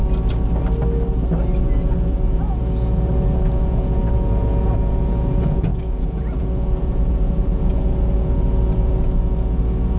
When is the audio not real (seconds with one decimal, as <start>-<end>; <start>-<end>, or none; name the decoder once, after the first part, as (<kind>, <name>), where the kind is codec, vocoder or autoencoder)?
1.6-10.0 (vocoder, Vocos)